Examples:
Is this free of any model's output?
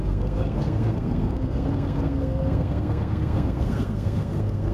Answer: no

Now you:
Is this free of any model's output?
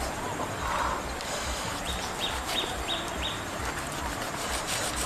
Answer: no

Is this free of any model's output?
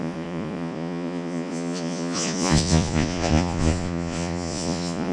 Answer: no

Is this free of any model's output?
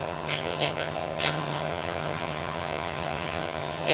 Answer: no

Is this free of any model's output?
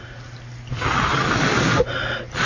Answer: yes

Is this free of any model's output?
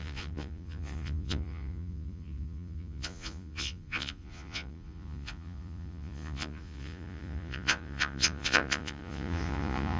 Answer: no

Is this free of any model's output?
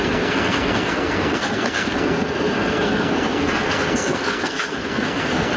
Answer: no